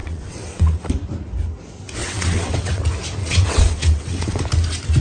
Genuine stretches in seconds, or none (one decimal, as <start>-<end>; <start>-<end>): 0.9-2.0; 2.8-3.2; 4.4-5.0